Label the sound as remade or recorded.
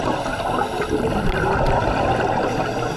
recorded